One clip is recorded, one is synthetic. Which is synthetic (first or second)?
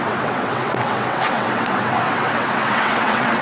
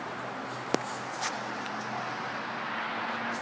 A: first